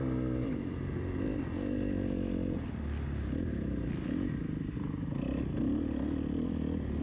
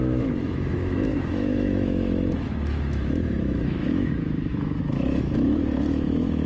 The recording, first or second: first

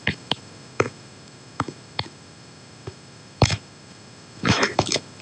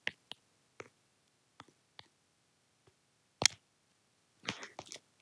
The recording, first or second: second